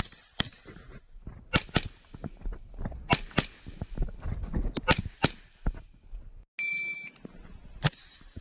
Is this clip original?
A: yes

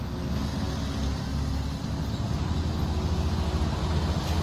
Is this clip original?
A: yes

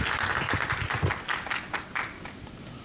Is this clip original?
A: yes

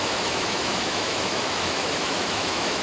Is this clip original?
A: no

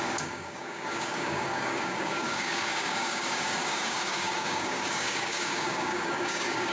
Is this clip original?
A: no